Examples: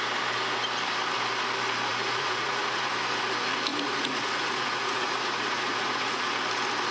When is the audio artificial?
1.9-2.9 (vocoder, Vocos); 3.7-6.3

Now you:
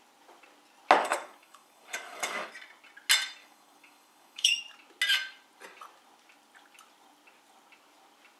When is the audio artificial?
1.0-2.5 (codec, DAC); 3.4-4.6

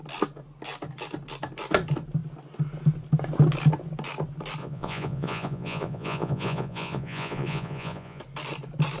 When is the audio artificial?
4.6-8.2 (vocoder, Vocos)